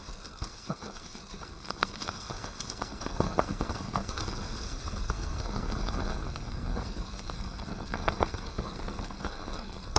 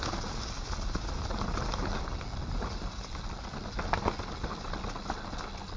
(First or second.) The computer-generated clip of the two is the first